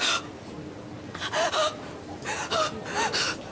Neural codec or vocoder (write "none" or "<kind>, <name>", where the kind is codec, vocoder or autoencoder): none